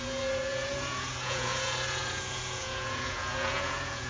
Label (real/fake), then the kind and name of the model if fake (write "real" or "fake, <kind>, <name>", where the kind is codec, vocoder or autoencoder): fake, vocoder, Vocos